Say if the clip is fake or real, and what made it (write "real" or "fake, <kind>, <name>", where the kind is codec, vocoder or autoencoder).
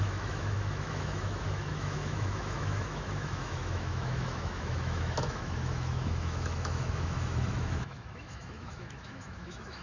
fake, autoencoder, DAC-VAE